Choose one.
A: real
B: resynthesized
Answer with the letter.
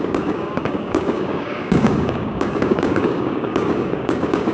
B